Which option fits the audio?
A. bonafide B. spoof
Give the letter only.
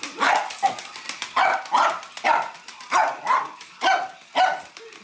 A